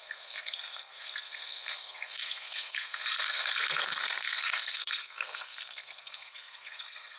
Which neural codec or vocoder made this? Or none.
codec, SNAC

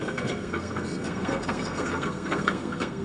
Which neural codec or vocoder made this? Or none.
codec, SNAC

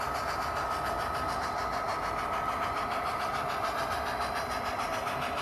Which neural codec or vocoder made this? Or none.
none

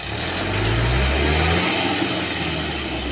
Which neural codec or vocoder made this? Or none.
none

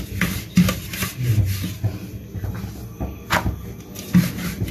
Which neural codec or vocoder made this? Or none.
none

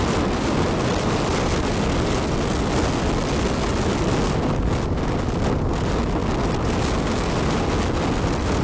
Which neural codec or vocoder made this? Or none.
none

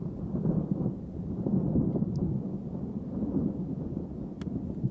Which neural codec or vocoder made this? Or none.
none